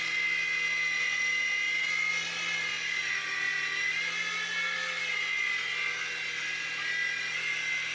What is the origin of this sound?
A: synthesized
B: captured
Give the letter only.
B